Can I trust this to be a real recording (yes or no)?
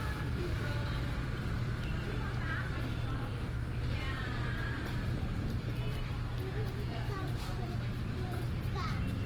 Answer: no